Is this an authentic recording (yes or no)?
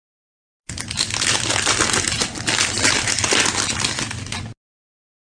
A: yes